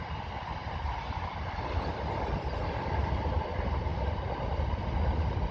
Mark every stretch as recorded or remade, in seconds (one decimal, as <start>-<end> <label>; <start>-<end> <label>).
0.0-5.5 recorded